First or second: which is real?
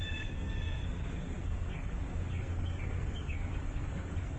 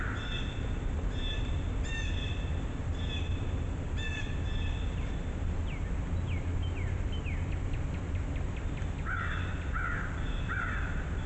second